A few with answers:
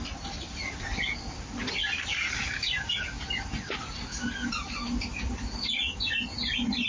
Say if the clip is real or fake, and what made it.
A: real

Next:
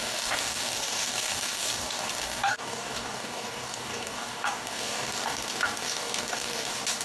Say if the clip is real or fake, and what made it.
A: fake, codec, DAC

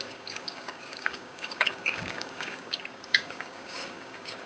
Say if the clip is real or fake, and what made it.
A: fake, codec, DAC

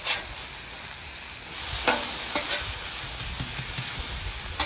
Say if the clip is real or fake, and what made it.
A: real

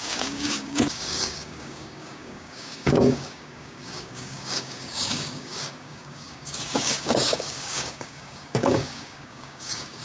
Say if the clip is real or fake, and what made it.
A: fake, codec, DAC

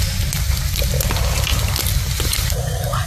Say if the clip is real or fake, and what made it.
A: real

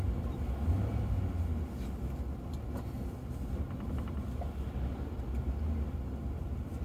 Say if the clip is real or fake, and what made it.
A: real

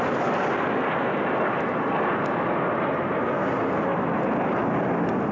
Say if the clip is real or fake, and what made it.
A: real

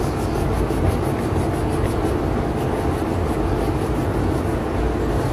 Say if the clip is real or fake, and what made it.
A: fake, codec, DAC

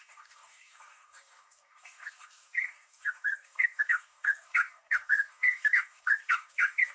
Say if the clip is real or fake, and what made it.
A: fake, codec, DAC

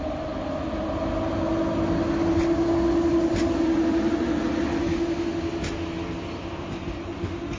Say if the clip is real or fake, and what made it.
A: real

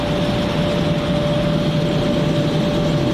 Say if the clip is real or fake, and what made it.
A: real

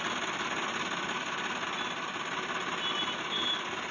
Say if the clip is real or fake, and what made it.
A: real